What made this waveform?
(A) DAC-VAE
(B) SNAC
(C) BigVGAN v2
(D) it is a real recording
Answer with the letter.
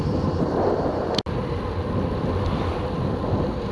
D